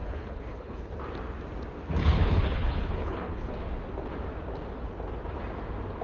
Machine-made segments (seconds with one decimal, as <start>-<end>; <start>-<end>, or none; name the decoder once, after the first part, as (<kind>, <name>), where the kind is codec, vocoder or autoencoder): 0.0-0.9 (codec, HILCodec); 2.0-3.5